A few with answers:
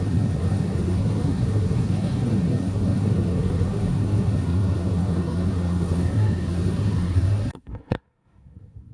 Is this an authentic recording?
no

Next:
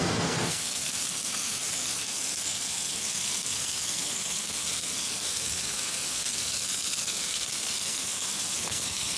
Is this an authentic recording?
no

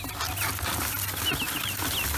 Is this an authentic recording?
yes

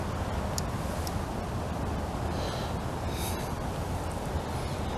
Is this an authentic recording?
yes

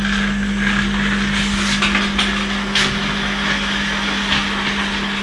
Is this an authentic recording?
yes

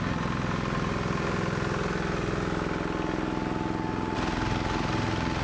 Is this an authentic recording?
yes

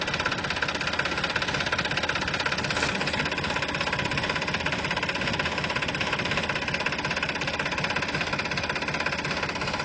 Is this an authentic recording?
yes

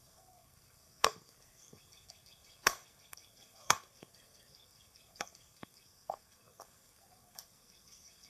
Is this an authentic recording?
no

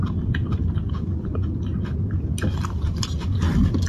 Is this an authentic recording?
yes